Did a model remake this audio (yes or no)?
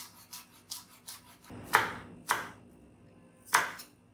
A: no